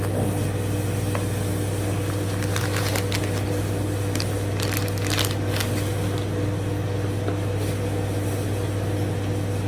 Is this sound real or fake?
real